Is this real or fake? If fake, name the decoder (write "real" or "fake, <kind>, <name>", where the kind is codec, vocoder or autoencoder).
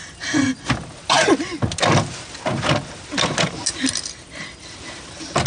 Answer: real